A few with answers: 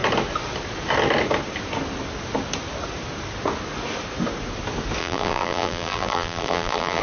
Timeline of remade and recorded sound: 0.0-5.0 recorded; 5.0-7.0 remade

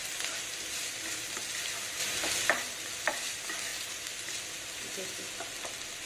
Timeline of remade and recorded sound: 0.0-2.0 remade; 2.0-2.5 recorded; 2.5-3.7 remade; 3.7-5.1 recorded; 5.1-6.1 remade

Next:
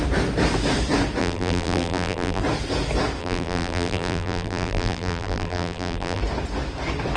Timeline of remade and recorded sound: 0.0-1.2 recorded; 1.2-2.4 remade; 2.4-3.2 recorded; 3.2-6.2 remade; 6.2-7.2 recorded

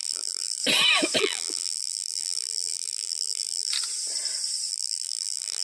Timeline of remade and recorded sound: 0.0-0.6 remade; 0.6-1.2 recorded; 1.2-3.7 remade; 3.7-4.7 recorded; 4.7-5.6 remade

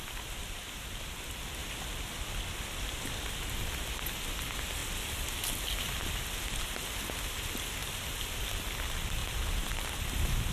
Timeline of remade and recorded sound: 0.0-1.6 recorded; 1.6-2.2 remade; 2.2-4.8 recorded; 4.8-5.9 remade; 5.9-7.8 recorded; 7.8-8.6 remade; 8.6-9.2 recorded; 9.2-10.5 remade

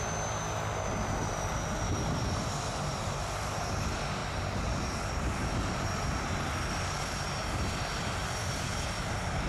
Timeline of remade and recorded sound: 0.0-2.7 recorded; 2.7-3.7 remade; 3.7-9.5 recorded